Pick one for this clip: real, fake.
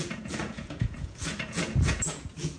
fake